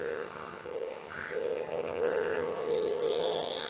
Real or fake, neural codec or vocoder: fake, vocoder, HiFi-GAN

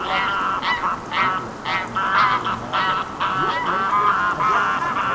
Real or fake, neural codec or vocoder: real